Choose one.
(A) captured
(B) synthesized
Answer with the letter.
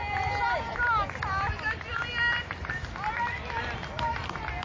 A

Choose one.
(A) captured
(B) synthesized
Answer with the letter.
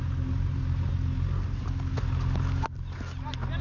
A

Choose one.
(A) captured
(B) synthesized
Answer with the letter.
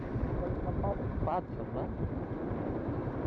B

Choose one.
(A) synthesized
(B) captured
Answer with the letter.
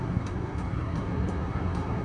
A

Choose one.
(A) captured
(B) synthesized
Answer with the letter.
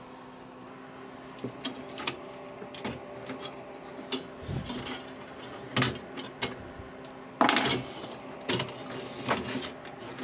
A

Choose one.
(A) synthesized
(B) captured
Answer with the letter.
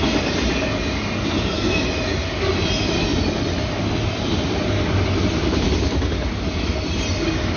B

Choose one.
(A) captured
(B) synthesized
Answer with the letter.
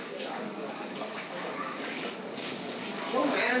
B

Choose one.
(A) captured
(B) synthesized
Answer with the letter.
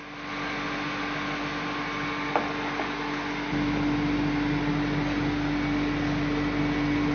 A